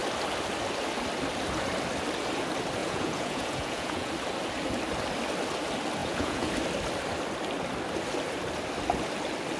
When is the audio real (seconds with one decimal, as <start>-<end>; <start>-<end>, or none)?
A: 0.0-2.8; 4.1-6.0; 6.5-9.6